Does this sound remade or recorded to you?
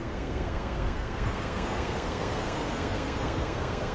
remade